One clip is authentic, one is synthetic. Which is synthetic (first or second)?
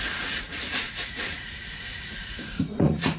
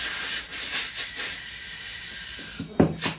first